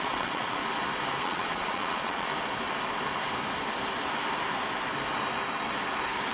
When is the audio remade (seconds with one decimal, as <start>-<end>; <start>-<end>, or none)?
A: 0.0-0.6; 1.2-2.3